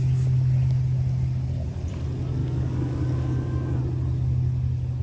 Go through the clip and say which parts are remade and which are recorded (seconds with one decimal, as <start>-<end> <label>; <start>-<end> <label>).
0.0-2.4 recorded; 2.4-3.8 remade; 3.8-5.0 recorded